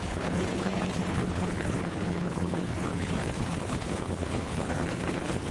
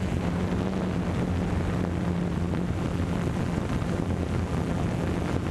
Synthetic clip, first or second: first